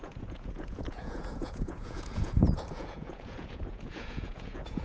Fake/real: fake